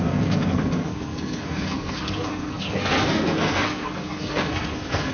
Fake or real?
fake